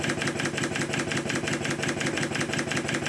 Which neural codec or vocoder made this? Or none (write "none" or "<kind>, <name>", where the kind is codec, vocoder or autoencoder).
none